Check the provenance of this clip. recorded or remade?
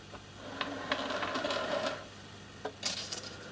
recorded